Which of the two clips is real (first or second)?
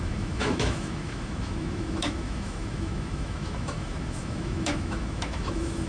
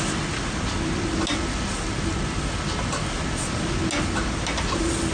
second